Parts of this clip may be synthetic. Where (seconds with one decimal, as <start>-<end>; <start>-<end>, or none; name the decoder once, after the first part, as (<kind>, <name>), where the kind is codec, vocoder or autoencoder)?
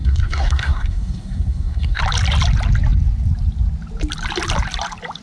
0.0-2.0 (codec, SNAC)